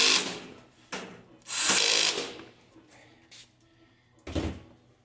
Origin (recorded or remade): recorded